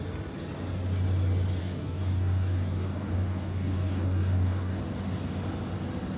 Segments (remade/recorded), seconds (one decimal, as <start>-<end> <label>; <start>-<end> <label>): 0.0-1.6 recorded; 1.6-4.8 remade; 4.8-6.2 recorded